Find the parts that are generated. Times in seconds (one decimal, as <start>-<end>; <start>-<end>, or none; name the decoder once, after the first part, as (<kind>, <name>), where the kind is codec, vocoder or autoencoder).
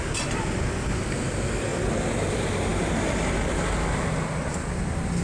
none